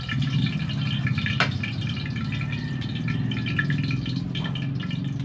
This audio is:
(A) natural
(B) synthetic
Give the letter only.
A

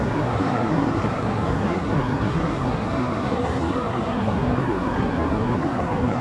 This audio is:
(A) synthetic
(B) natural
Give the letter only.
A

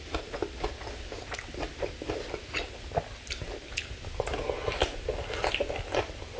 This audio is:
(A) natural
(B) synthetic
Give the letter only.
A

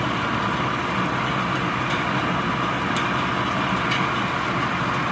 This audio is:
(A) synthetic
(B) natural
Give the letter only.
B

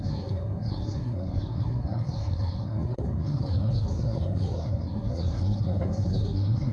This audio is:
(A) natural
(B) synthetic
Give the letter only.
B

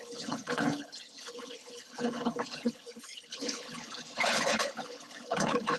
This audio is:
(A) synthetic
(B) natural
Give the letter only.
A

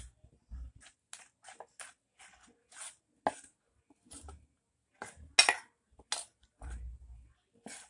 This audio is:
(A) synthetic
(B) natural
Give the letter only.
B